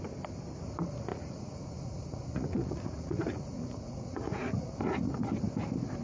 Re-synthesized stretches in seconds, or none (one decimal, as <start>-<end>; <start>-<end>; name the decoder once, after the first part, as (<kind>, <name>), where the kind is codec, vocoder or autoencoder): 1.1-4.7 (vocoder, Vocos)